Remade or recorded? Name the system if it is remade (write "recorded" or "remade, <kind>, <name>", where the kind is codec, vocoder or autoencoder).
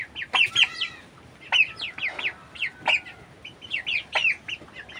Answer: recorded